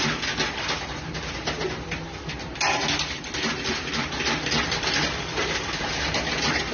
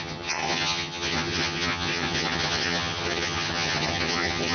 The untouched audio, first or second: first